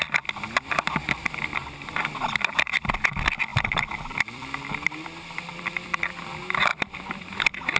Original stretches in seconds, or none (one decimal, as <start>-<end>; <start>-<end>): 0.0-3.5; 6.2-6.7; 7.3-7.8